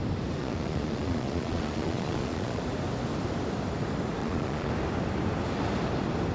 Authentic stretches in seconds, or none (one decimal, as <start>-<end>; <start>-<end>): 0.0-0.4; 2.6-4.2; 4.7-6.3